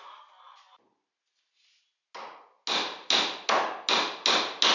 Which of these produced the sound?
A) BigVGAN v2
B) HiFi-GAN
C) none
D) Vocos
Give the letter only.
C